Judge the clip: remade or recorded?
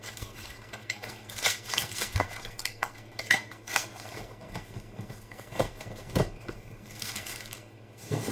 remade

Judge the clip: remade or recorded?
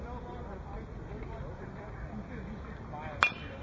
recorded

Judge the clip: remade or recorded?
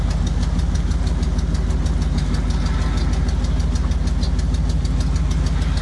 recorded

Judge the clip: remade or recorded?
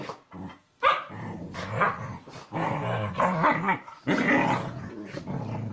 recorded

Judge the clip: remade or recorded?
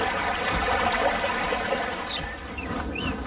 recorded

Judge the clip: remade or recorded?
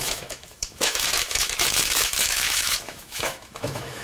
remade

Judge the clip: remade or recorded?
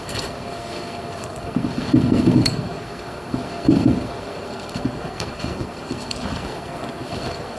remade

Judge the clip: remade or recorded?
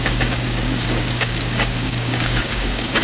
remade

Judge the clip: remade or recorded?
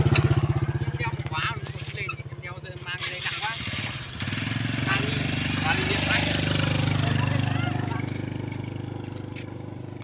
recorded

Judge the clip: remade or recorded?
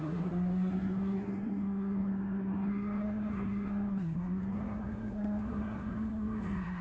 remade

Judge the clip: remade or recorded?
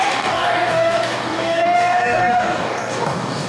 remade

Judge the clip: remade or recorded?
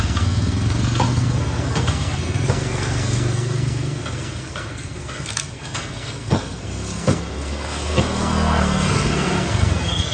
remade